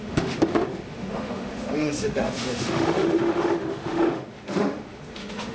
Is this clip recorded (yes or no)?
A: no